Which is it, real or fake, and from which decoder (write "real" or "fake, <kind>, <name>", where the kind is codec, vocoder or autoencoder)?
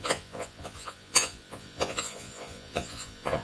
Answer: fake, vocoder, Vocos